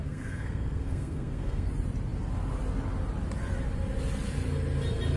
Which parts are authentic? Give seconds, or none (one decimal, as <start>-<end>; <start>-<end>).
1.7-5.2